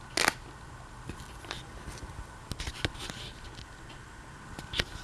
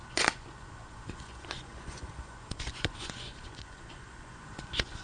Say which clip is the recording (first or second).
first